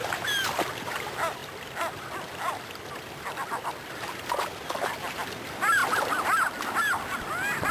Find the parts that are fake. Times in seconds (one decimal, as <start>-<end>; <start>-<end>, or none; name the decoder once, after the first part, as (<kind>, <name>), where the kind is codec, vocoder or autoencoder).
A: 0.0-7.7 (vocoder, BigVGAN v2)